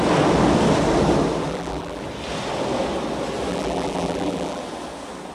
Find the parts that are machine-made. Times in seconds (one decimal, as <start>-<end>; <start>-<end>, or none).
1.5-2.0; 3.5-4.6